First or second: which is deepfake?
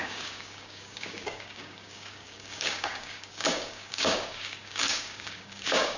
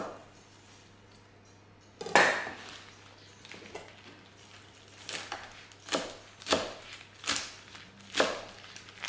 first